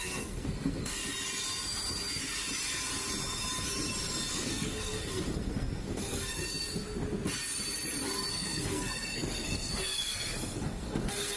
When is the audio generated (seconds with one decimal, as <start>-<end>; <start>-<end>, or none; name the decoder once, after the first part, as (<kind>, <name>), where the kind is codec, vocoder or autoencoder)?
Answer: 0.0-1.0 (codec, SNAC); 4.3-6.4; 8.3-11.4

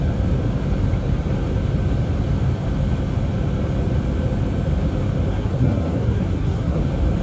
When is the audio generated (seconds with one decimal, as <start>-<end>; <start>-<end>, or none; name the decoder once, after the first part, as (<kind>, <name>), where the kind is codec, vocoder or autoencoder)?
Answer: 5.3-6.8 (codec, SNAC)

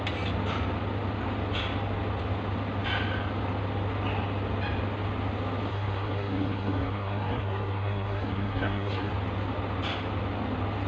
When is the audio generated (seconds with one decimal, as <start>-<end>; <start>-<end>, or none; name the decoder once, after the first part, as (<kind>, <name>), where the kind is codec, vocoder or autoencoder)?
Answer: 5.7-9.1 (codec, SNAC)

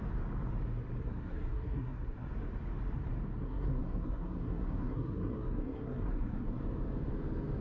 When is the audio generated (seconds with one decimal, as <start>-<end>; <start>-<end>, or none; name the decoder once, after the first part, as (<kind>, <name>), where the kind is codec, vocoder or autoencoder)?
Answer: 1.0-2.3 (codec, SNAC); 3.4-6.6

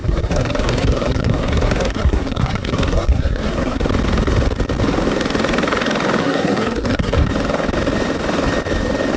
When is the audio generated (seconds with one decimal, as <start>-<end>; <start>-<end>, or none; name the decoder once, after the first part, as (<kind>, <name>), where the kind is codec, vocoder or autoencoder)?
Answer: 0.0-3.8 (codec, SNAC); 6.2-7.3

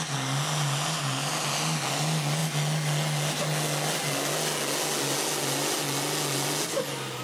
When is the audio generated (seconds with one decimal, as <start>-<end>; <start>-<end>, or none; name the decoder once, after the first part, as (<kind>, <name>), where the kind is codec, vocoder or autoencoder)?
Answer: none

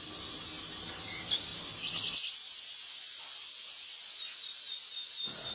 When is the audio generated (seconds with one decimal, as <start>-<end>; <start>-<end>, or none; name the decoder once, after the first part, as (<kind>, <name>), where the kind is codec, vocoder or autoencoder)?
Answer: none